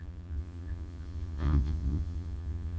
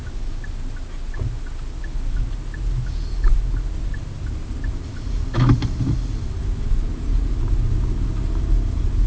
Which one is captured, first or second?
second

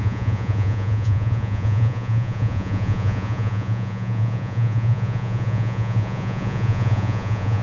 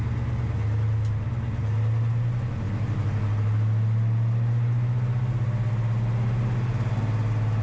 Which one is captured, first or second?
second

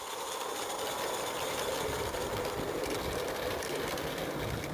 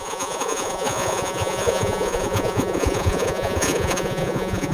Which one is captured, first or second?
first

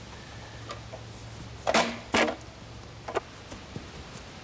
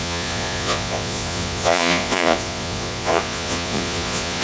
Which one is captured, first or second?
first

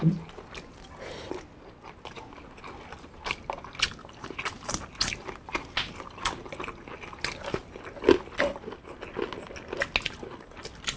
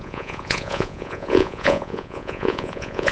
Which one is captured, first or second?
first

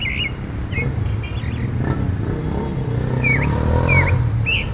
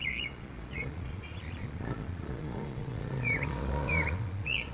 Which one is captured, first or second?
first